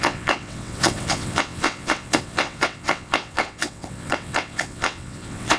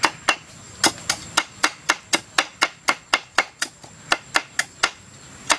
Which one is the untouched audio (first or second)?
second